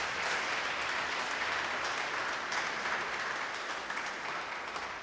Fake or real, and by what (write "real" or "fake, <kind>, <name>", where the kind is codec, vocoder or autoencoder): real